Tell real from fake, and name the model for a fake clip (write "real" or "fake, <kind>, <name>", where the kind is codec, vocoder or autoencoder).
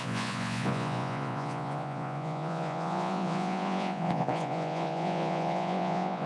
fake, vocoder, Vocos